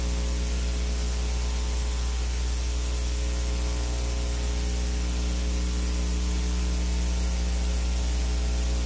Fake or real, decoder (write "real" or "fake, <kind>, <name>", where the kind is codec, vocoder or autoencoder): real